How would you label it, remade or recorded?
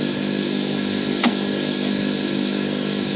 remade